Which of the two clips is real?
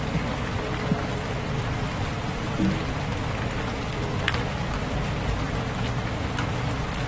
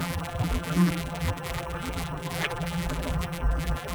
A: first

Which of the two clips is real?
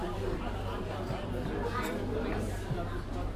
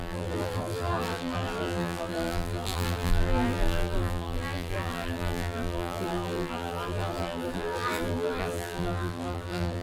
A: first